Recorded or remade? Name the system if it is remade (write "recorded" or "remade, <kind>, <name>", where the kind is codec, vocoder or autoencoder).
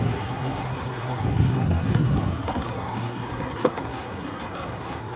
remade, codec, SNAC